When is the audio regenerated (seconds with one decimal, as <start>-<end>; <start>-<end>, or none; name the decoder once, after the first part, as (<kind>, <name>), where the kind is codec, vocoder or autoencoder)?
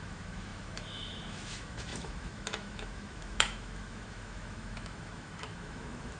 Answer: 0.0-6.2 (autoencoder, DAC-VAE)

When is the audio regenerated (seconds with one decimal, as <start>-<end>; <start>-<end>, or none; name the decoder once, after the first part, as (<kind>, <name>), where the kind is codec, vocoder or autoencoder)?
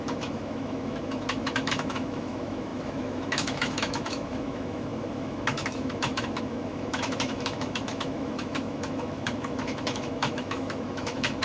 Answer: 0.0-11.4 (autoencoder, DAC-VAE)